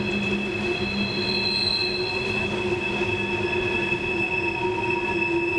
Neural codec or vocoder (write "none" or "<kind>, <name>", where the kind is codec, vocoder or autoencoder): none